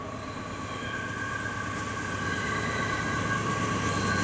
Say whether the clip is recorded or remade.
recorded